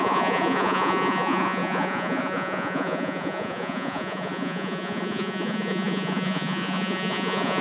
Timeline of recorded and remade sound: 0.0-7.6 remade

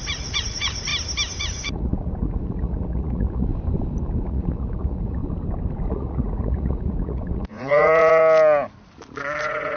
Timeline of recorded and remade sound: 0.0-0.9 remade; 0.9-1.4 recorded; 1.4-3.5 remade; 3.5-4.1 recorded; 4.1-5.2 remade; 5.2-5.9 recorded; 5.9-8.2 remade; 8.2-9.4 recorded; 9.4-9.8 remade

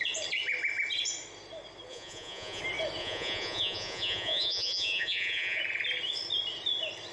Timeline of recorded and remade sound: 0.0-1.9 recorded; 1.9-2.6 remade; 2.6-3.0 recorded; 3.0-5.6 remade; 5.6-7.1 recorded

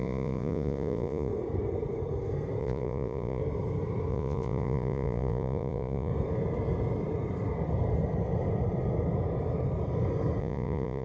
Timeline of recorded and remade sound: 0.0-1.3 remade; 1.3-2.6 recorded; 2.6-3.4 remade; 3.4-4.1 recorded; 4.1-6.1 remade; 6.1-10.4 recorded; 10.4-11.0 remade

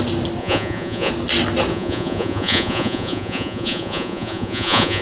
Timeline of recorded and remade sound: 0.0-0.4 recorded; 0.4-1.1 remade; 1.1-1.7 recorded; 1.7-5.0 remade

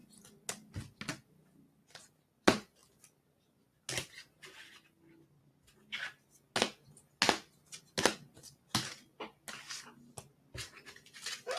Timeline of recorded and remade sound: 0.0-11.6 recorded

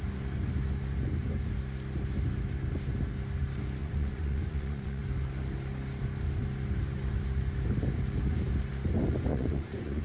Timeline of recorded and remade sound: 0.0-3.8 recorded; 3.8-5.0 remade; 5.0-9.3 recorded; 9.3-10.0 remade